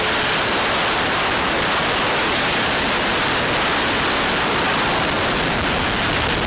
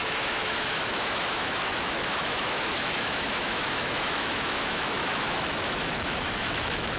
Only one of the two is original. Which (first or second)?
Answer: first